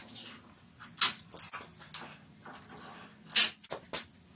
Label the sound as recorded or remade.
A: recorded